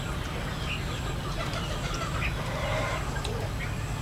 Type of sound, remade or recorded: recorded